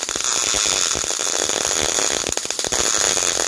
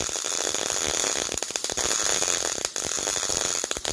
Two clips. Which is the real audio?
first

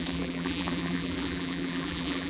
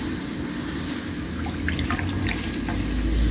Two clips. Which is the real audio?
second